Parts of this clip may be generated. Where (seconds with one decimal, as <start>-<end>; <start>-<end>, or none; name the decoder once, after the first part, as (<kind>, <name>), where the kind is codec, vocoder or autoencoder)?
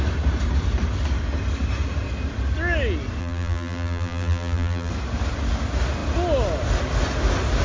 3.2-4.9 (vocoder, BigVGAN v2)